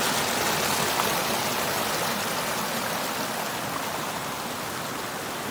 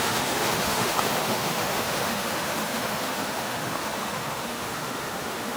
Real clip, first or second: first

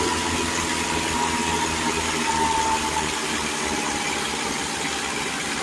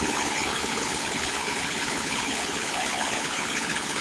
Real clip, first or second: first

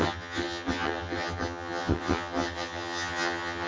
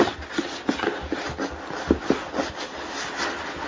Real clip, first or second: second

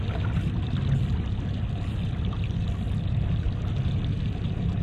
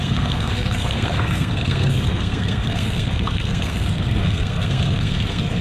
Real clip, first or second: first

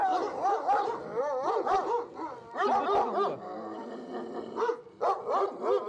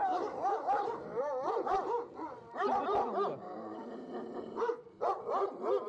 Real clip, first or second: first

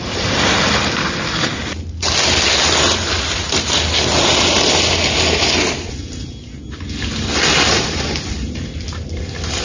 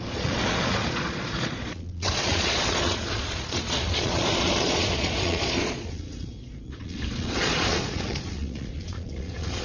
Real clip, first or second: first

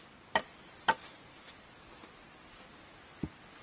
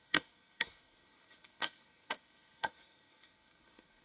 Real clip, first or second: first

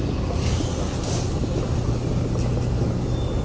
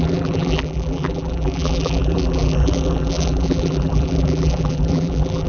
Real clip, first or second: first